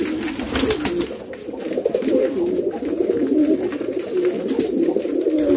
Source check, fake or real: real